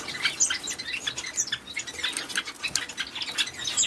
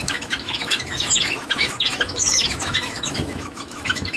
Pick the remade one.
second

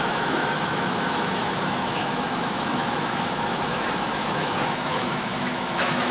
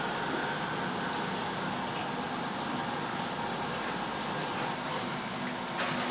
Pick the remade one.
first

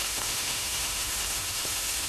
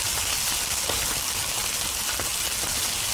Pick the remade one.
first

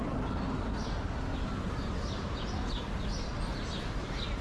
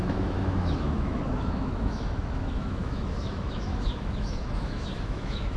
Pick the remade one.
second